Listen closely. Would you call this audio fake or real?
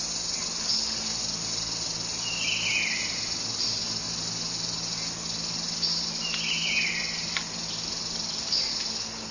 fake